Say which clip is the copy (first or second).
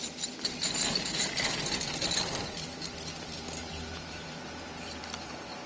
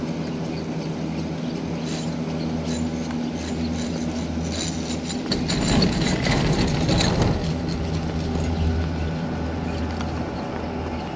first